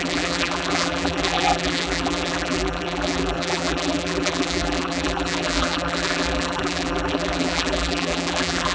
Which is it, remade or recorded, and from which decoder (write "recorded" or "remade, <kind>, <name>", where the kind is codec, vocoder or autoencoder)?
remade, vocoder, BigVGAN v2